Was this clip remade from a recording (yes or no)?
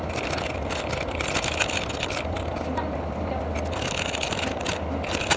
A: no